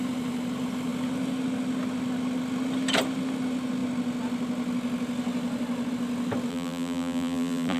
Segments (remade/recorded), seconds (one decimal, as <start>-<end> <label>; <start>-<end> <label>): 0.0-6.5 recorded; 6.5-7.8 remade